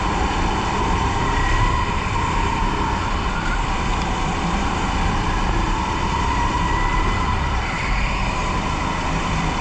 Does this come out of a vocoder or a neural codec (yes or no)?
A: yes